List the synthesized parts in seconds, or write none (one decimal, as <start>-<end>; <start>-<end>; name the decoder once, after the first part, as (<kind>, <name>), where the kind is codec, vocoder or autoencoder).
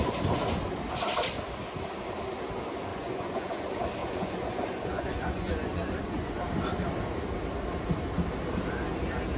2.9-3.6 (vocoder, Vocos); 4.0-6.4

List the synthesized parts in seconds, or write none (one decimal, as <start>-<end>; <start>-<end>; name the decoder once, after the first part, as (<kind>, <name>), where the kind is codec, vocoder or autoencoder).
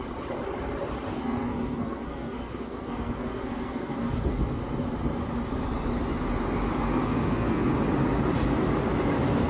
1.1-4.6 (codec, SNAC); 7.0-7.7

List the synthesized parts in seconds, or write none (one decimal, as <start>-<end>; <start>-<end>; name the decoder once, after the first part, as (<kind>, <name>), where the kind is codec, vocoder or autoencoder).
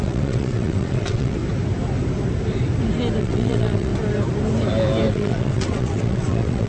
0.0-1.4 (vocoder, WaveNeXt); 3.2-3.9; 5.1-6.7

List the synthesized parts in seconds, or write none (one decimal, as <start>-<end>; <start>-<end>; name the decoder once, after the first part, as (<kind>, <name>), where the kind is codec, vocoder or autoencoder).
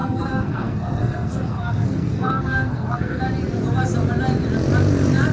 0.0-3.2 (codec, SNAC)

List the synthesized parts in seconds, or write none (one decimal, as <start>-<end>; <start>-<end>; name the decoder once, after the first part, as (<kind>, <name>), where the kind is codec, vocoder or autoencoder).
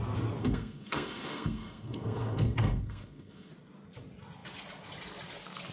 0.4-3.5 (codec, SNAC)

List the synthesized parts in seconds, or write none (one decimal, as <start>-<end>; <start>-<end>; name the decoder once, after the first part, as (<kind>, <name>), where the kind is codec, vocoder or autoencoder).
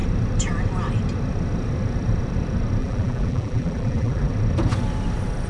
2.8-4.3 (vocoder, BigVGAN v2)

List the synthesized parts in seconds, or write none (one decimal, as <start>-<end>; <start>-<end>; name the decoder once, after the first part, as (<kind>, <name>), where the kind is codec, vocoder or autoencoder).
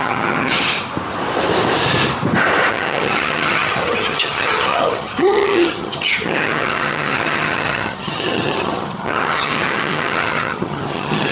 0.0-0.7 (vocoder, HiFi-GAN); 2.7-11.3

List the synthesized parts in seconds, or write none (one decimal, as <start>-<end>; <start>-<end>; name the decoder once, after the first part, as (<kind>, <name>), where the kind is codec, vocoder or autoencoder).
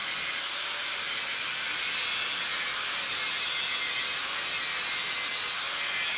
0.0-0.8 (vocoder, BigVGAN v2)